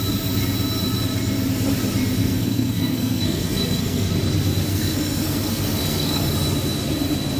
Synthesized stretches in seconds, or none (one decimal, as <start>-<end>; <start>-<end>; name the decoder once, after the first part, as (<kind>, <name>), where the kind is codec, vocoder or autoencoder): 2.2-4.1 (codec, SNAC); 4.7-6.3